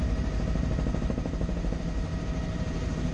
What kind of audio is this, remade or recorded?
remade